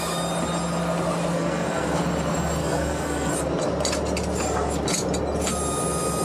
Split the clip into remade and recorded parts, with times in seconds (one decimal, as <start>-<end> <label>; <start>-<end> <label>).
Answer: 0.0-1.3 recorded; 1.3-2.0 remade; 2.0-2.6 recorded; 2.6-3.3 remade; 3.3-6.2 recorded